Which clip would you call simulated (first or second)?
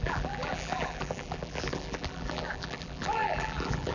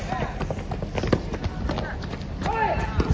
first